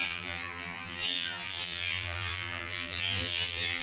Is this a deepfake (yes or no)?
yes